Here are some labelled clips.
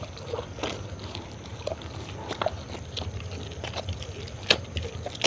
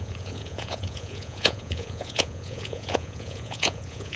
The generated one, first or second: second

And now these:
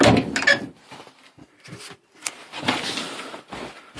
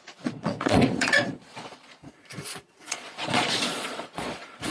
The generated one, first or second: second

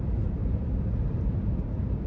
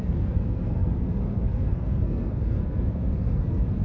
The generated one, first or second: second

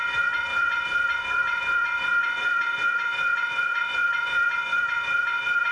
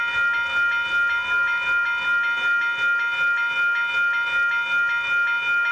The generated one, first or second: first